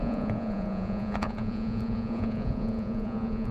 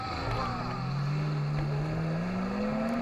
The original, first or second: second